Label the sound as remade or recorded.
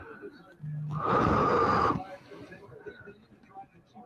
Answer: recorded